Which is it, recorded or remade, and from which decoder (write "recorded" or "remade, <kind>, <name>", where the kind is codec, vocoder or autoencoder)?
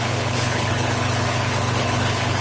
remade, codec, HILCodec